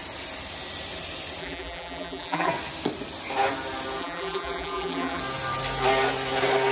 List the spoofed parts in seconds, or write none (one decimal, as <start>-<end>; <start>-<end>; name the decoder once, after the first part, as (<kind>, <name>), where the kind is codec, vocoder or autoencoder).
1.4-2.5 (vocoder, BigVGAN v2); 4.0-5.2